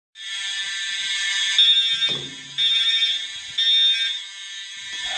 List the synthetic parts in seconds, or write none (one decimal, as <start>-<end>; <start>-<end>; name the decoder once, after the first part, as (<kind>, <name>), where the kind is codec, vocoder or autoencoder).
none